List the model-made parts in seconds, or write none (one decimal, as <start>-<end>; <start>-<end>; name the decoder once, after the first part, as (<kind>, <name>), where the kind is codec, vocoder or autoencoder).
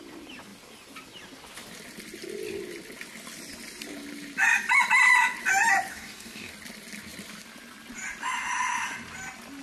5.9-6.5 (codec, DAC)